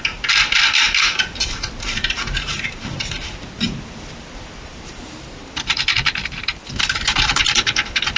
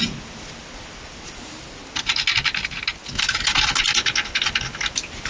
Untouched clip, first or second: second